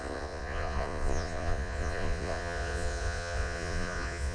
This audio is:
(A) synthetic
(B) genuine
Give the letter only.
A